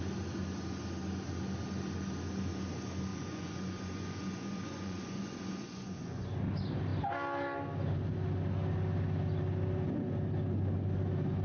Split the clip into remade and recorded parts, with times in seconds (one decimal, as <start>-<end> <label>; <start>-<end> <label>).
0.0-3.1 recorded; 3.1-6.4 remade; 6.4-11.4 recorded